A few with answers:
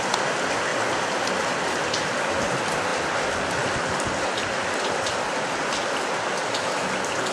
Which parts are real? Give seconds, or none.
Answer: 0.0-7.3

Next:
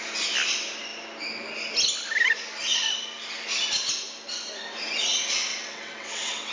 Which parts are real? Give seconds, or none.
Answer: 0.0-5.5

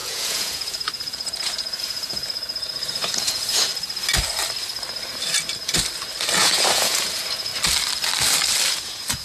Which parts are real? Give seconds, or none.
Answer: 3.7-6.4; 7.5-8.7